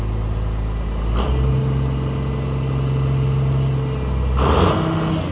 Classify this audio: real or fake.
real